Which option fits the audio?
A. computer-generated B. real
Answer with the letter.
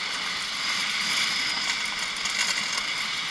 B